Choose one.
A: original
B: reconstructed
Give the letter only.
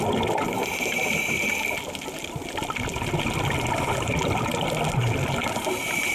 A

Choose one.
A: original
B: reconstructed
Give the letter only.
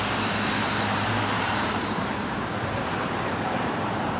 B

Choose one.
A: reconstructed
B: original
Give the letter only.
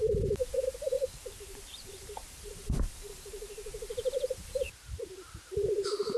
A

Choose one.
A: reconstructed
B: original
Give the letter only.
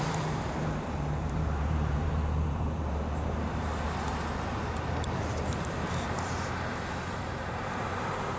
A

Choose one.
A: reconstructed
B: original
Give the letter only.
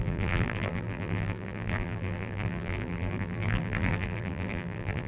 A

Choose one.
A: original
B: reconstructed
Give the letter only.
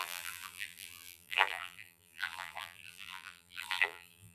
B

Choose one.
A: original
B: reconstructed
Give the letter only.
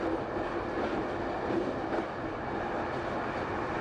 A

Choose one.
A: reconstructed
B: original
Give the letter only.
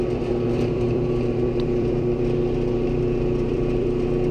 A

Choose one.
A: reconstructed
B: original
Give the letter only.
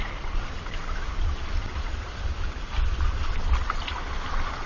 B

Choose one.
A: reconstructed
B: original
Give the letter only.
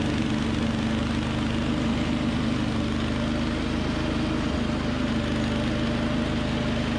B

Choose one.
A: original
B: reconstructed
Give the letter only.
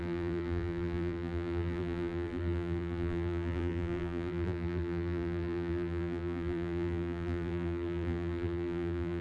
B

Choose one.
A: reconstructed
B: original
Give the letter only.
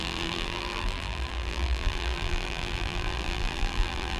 A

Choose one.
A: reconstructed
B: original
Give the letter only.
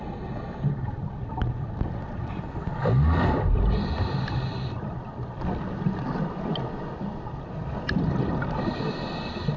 B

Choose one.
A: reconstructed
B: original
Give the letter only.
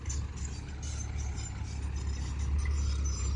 B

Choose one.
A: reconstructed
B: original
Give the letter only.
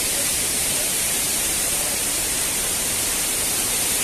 A